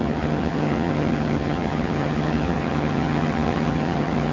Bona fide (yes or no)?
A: no